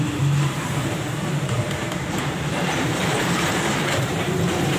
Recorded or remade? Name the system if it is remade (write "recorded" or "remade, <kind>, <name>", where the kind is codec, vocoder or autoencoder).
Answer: remade, vocoder, BigVGAN v2